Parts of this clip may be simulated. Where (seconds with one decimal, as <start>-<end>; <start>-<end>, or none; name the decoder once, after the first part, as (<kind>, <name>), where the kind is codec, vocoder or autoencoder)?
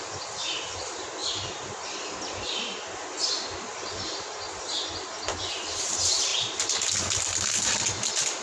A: 0.0-1.2 (vocoder, BigVGAN v2); 5.4-6.3; 7.2-8.4